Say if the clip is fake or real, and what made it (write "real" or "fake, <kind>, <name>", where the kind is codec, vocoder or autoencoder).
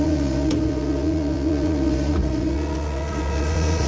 fake, vocoder, Vocos